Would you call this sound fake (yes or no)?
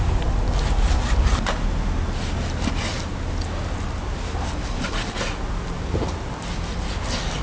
no